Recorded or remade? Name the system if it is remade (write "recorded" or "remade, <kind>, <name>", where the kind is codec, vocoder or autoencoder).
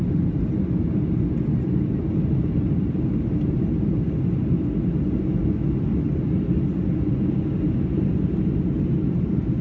recorded